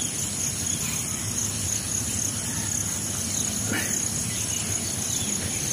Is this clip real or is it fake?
real